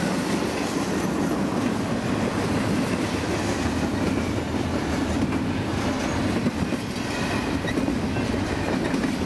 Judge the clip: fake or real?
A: real